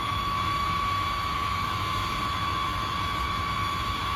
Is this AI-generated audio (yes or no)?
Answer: yes